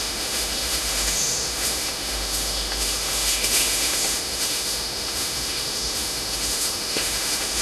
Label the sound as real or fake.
fake